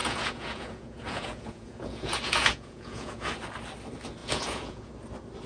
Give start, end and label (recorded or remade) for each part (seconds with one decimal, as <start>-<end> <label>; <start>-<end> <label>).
0.0-3.3 remade; 3.3-4.2 recorded; 4.2-4.9 remade; 4.9-5.5 recorded